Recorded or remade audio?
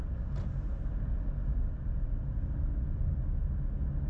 recorded